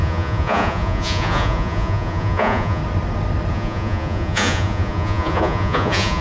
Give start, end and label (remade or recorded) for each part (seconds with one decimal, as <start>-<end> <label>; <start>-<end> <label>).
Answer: 0.0-2.8 remade; 2.8-3.5 recorded; 3.5-6.2 remade